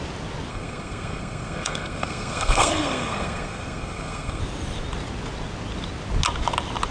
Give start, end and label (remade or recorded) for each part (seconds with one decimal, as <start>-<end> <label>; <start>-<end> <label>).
0.0-0.5 recorded; 0.5-4.4 remade; 4.4-6.9 recorded